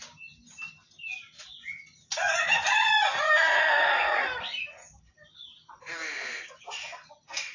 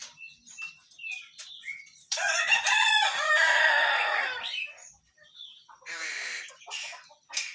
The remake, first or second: second